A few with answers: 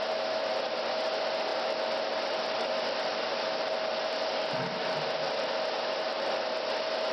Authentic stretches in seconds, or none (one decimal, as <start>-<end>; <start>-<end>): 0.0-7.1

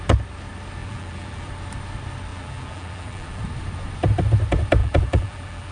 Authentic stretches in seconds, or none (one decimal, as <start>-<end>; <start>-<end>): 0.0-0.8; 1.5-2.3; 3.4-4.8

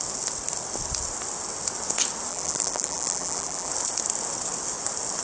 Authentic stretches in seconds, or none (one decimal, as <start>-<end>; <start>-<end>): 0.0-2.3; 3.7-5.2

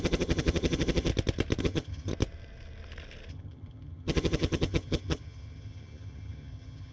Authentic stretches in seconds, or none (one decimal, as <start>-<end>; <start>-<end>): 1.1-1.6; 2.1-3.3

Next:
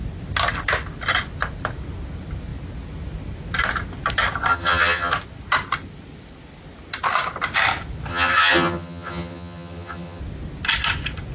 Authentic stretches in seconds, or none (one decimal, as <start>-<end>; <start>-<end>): 0.0-4.5; 5.1-8.1; 10.2-11.3

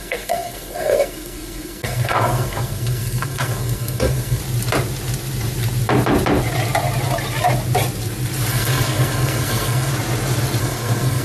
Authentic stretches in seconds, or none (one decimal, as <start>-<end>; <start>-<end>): 4.4-8.5; 9.9-10.6